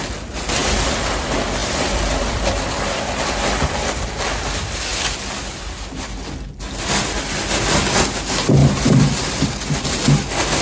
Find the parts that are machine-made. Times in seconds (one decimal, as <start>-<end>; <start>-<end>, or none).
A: 0.6-1.2; 1.6-3.6; 8.6-10.0